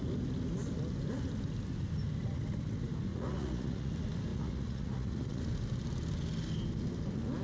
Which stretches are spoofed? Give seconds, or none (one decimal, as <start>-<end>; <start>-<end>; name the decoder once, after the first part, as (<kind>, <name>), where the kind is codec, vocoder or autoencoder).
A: 3.1-3.9 (vocoder, Vocos); 4.3-5.4